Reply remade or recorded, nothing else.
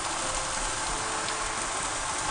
recorded